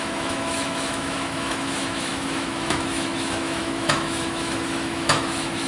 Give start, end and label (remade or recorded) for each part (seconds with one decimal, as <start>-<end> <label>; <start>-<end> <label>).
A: 0.0-5.7 remade